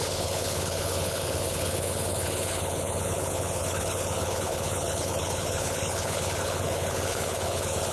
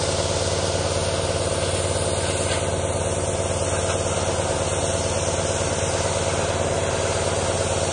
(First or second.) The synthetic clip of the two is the first